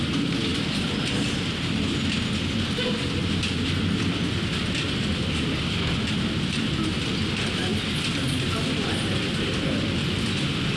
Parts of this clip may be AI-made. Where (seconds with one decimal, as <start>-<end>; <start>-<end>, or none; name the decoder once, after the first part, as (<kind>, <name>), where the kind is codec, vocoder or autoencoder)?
none